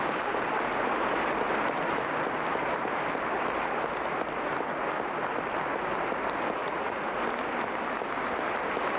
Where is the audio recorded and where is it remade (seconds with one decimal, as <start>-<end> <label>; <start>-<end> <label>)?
0.0-6.6 recorded; 6.6-7.2 remade; 7.2-9.0 recorded